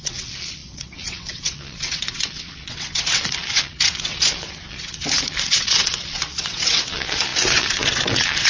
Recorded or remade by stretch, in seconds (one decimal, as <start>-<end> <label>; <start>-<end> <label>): 0.0-8.5 remade